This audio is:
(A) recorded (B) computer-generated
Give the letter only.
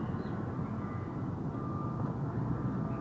A